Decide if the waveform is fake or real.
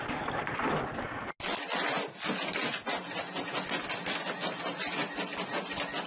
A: real